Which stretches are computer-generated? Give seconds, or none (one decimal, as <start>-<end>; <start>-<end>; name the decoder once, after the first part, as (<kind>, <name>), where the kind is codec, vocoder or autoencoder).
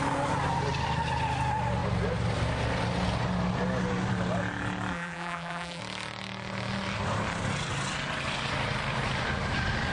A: 4.9-5.8 (vocoder, BigVGAN v2)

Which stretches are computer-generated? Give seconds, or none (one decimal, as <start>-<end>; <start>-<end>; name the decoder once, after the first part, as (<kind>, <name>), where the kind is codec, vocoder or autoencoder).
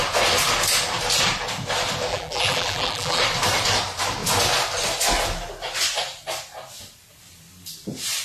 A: 2.1-3.2 (vocoder, BigVGAN v2)